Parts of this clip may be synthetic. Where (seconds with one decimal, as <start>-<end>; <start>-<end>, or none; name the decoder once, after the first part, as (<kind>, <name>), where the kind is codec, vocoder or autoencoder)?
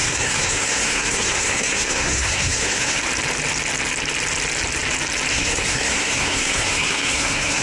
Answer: 0.0-3.0 (codec, SNAC); 5.3-7.6